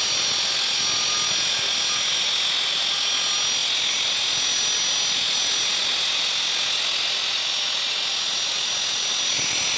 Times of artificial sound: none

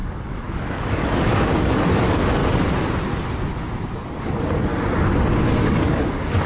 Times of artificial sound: 0.0-2.4 (codec, DAC); 4.2-4.7; 5.5-6.5

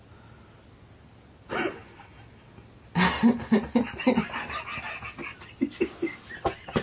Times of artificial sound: none

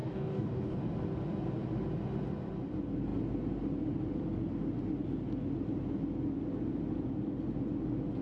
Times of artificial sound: 0.0-0.8 (codec, DAC)

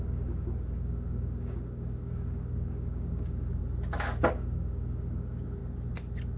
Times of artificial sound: 0.0-3.6 (codec, DAC); 4.3-5.6

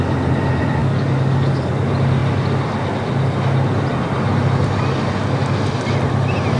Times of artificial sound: 0.8-1.7 (codec, DAC)